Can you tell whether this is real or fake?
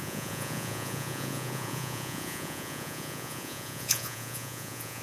fake